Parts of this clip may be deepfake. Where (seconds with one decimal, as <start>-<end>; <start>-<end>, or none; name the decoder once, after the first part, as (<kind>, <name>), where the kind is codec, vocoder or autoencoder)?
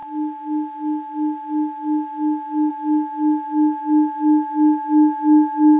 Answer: none